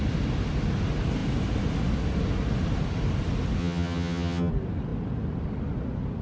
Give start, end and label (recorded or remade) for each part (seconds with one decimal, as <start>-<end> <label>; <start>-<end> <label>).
0.0-3.6 recorded; 3.6-4.5 remade; 4.5-6.2 recorded